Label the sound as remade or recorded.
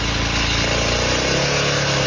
recorded